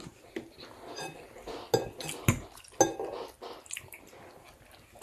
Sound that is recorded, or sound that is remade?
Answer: recorded